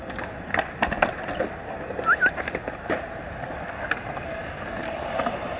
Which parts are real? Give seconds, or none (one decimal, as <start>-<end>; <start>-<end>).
0.0-4.8